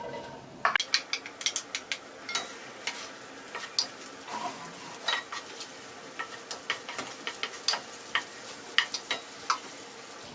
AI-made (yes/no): no